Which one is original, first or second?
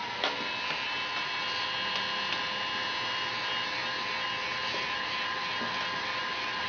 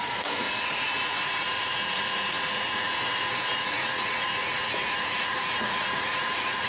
first